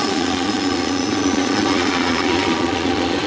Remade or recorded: remade